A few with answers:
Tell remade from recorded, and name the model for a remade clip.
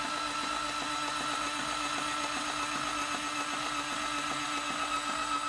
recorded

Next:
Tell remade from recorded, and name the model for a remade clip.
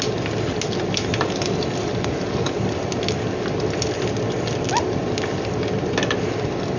recorded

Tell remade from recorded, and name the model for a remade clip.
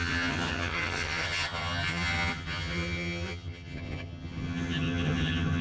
remade, vocoder, HiFi-GAN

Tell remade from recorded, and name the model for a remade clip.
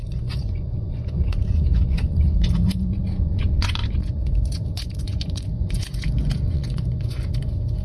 remade, vocoder, Vocos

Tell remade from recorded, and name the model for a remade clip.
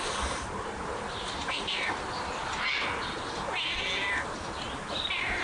recorded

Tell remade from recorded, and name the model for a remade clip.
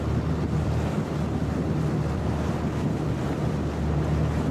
recorded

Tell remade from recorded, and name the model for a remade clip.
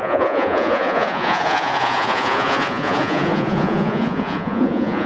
remade, vocoder, Vocos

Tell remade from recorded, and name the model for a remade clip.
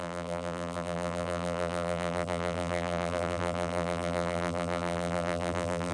remade, vocoder, BigVGAN v2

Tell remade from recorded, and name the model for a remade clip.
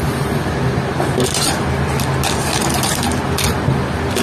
recorded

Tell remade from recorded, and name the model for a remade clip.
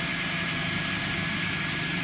remade, vocoder, BigVGAN v2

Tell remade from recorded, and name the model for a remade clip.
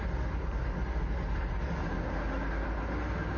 recorded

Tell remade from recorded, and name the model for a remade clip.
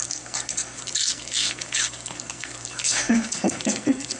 remade, codec, SNAC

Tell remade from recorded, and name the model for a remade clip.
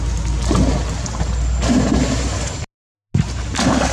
recorded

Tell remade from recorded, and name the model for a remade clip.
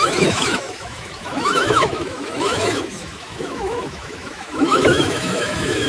remade, autoencoder, DAC-VAE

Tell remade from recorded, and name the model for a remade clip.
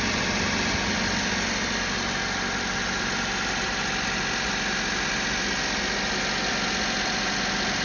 recorded